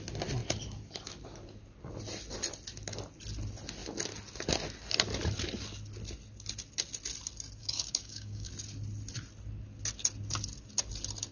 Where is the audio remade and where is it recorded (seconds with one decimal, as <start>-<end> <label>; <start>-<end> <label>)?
0.0-7.6 recorded; 7.6-8.5 remade; 8.5-11.3 recorded